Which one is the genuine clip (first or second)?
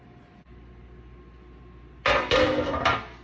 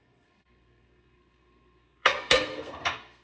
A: first